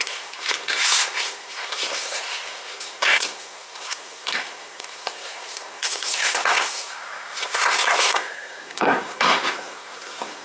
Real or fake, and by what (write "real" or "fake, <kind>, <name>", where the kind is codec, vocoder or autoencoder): fake, codec, SNAC